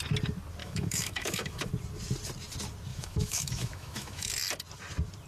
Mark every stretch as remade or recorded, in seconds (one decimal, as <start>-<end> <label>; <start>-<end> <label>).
0.0-0.6 recorded; 0.6-1.7 remade; 1.7-2.9 recorded; 2.9-4.3 remade; 4.3-5.3 recorded